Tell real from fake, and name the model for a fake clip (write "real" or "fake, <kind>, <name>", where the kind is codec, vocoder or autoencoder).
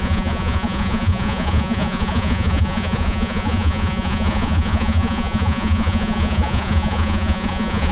fake, vocoder, Vocos